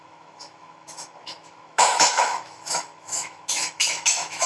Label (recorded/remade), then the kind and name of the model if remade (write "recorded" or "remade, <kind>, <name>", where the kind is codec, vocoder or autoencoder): remade, autoencoder, DAC-VAE